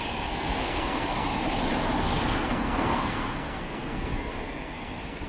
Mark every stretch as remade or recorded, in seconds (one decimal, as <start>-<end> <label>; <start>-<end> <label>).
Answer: 0.0-1.3 remade; 1.3-2.0 recorded; 2.0-5.3 remade